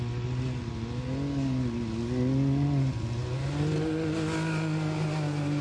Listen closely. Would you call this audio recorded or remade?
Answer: recorded